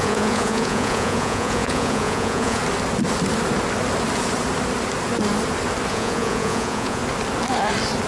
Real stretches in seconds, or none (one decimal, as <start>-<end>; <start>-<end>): 2.6-5.9; 7.0-8.1